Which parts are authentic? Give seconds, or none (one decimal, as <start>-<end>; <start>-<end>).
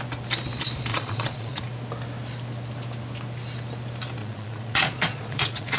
0.0-0.9; 1.6-4.2